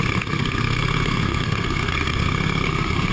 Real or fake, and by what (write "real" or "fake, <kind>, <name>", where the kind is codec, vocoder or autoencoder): fake, codec, SNAC